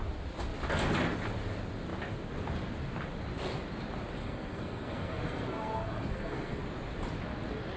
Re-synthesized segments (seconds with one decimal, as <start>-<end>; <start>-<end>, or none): 4.2-6.6

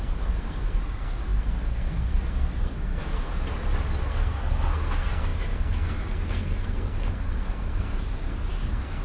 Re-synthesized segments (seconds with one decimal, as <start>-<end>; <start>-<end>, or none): 0.0-3.3; 4.0-9.0

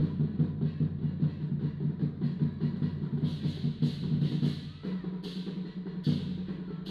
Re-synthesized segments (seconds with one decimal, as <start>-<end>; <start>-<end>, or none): none

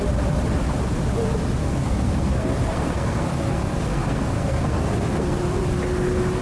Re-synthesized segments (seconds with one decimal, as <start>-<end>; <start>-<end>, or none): 1.6-5.4

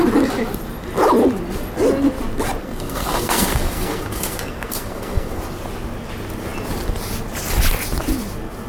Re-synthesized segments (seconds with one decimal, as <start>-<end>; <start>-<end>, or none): 2.6-5.4